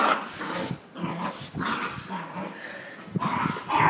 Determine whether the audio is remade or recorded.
recorded